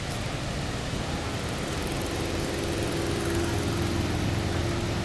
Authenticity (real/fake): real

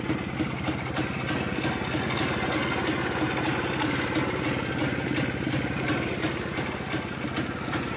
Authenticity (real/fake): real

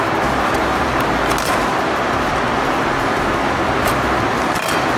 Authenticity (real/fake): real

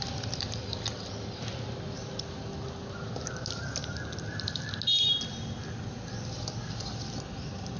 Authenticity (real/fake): real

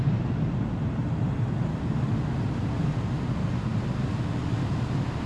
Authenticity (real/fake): real